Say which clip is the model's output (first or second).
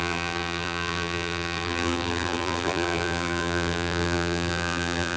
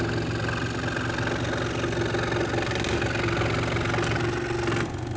first